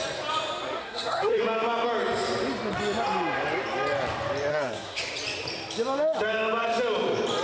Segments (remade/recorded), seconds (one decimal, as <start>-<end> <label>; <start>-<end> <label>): 0.0-0.8 recorded; 0.8-1.4 remade; 1.4-4.5 recorded; 4.5-5.0 remade; 5.0-7.4 recorded